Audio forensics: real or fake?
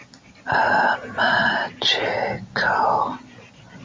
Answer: fake